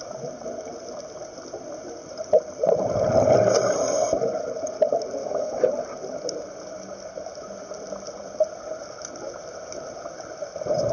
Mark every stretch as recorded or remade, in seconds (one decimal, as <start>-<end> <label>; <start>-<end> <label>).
0.0-5.2 recorded; 5.2-5.7 remade; 5.7-10.9 recorded